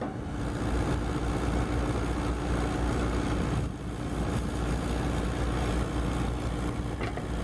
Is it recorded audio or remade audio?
recorded